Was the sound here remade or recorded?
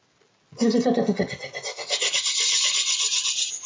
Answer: recorded